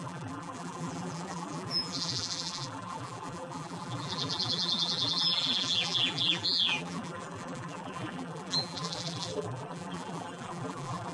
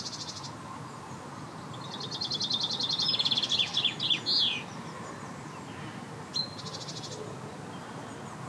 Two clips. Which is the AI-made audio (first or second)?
first